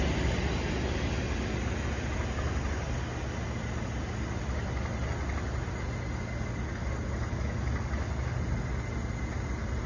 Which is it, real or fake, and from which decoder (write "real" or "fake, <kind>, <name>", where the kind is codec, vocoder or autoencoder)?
real